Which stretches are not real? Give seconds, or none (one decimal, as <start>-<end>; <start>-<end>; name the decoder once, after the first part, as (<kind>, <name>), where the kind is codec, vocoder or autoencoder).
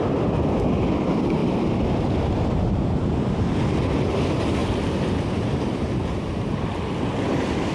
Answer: none